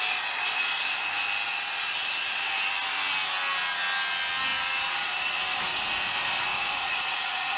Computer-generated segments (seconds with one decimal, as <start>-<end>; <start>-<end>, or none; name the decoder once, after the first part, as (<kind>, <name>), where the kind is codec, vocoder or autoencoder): 6.5-7.6 (vocoder, Vocos)